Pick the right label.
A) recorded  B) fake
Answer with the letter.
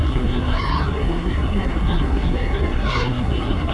B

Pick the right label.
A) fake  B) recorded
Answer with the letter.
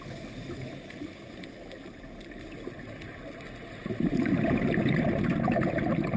B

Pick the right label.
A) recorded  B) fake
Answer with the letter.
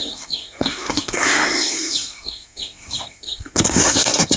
B